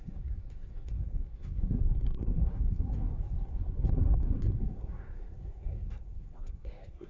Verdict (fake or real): fake